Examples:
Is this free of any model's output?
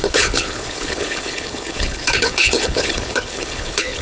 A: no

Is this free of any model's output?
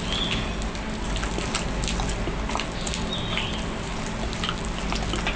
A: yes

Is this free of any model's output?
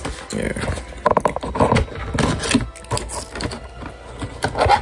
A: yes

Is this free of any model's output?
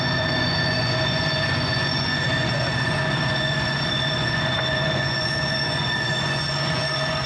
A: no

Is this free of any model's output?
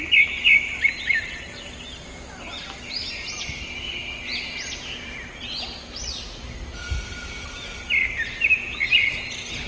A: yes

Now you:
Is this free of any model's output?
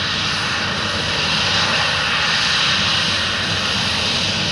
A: no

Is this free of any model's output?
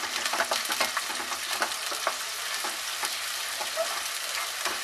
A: yes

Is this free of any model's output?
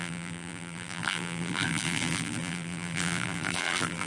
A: no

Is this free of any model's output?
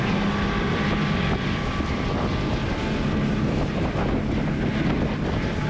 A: yes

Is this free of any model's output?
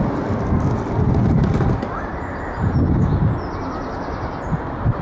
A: yes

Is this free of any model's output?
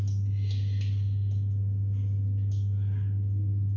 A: yes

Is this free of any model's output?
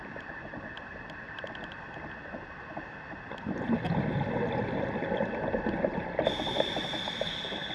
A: yes